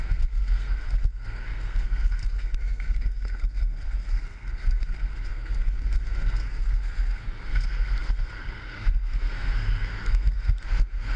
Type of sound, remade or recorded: remade